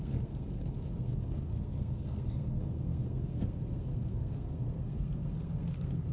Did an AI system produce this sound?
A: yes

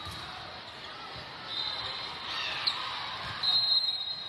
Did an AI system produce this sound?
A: yes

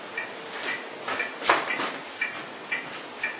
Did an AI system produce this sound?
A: no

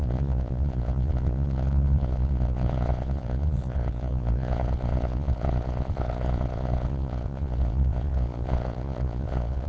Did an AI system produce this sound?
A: yes